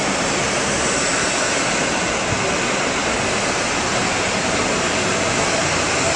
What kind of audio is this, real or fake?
real